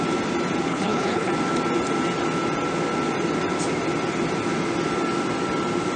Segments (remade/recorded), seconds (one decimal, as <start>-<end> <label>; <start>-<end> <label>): 0.0-0.7 recorded; 0.7-1.3 remade; 1.3-6.0 recorded